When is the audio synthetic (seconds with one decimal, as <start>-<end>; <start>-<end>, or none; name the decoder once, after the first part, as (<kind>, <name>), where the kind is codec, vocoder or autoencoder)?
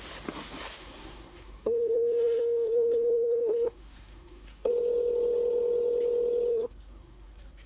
0.8-4.7 (codec, SNAC); 6.5-7.7